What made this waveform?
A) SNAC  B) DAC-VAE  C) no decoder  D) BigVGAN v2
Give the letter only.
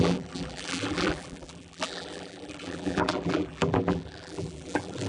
D